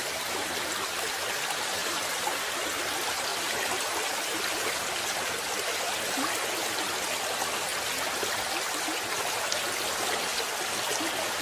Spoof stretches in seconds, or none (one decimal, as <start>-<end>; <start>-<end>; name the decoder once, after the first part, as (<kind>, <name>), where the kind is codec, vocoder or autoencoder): 1.8-2.8 (vocoder, BigVGAN v2); 3.3-3.9